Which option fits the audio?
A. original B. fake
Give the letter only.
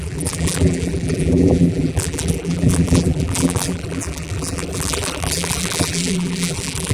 B